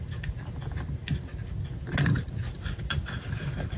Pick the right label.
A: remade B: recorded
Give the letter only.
B